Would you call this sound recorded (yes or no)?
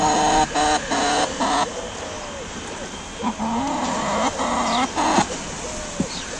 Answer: yes